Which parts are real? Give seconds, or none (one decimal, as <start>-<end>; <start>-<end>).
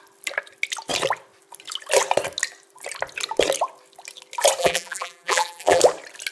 0.0-4.6; 5.8-6.3